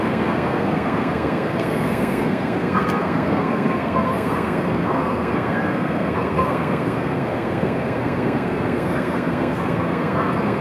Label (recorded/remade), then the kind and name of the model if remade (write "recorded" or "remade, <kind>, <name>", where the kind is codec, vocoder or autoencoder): remade, codec, SNAC